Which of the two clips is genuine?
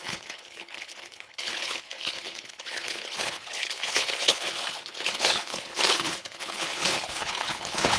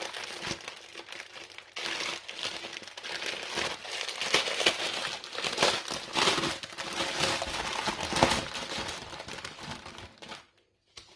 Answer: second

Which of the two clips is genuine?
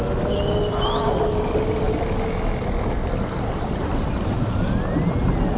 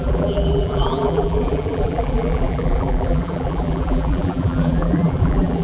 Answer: first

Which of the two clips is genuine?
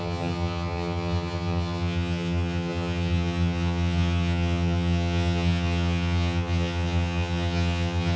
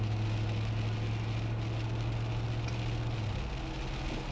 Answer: second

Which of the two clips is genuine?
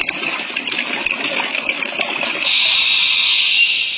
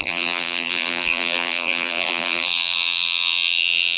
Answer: first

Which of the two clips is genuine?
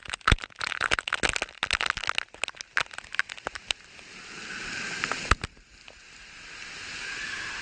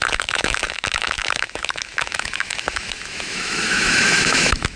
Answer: first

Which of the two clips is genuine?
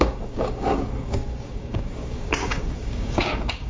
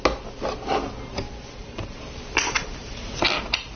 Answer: second